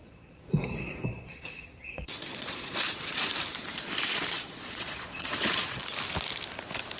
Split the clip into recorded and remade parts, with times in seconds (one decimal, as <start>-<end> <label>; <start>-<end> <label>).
0.0-3.3 remade; 3.3-4.1 recorded; 4.1-5.8 remade; 5.8-7.0 recorded